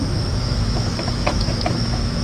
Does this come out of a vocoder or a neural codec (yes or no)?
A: yes